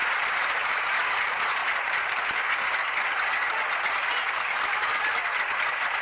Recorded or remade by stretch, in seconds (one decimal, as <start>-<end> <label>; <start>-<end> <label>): 0.0-0.8 remade; 0.8-1.6 recorded; 1.6-2.2 remade; 2.2-6.0 recorded